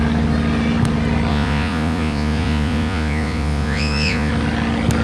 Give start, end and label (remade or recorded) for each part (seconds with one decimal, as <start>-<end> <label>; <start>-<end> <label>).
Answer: 0.0-1.3 recorded; 1.3-4.3 remade; 4.3-5.0 recorded